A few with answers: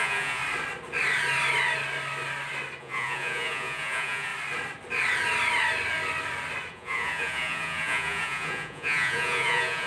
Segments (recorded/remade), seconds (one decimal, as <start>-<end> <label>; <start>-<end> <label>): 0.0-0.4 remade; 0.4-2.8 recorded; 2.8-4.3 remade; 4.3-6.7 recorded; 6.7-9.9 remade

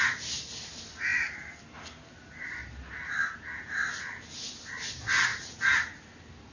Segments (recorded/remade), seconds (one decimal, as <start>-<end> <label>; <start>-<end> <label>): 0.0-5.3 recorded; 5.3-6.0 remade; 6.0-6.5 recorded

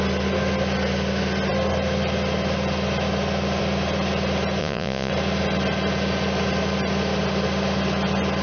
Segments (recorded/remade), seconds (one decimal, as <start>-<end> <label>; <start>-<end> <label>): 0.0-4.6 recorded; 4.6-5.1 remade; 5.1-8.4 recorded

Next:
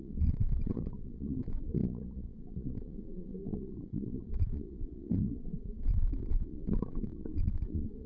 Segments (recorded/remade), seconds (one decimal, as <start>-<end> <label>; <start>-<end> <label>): 0.0-8.1 remade

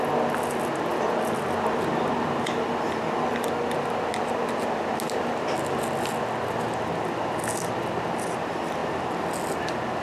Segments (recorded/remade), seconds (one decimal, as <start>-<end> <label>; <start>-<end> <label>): 0.0-10.0 recorded